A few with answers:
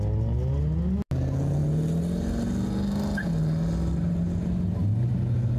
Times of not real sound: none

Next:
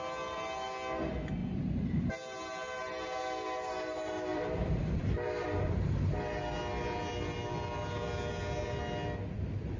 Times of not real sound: 1.4-2.1 (vocoder, BigVGAN v2); 4.3-6.1

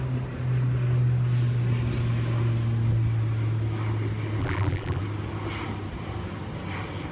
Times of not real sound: 4.4-5.0 (vocoder, BigVGAN v2)

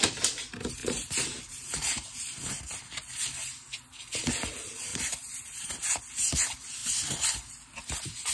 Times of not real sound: 0.8-2.6 (vocoder, BigVGAN v2); 4.9-6.0